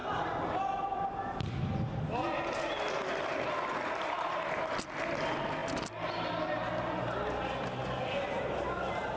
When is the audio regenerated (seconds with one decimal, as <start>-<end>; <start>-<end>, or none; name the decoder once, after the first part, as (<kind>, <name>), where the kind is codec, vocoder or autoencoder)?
none